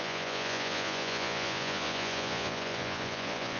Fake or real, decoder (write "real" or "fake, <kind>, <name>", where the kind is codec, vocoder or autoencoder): fake, vocoder, Vocos